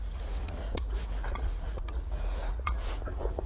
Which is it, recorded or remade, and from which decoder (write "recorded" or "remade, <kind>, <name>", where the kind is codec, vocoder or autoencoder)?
remade, vocoder, Vocos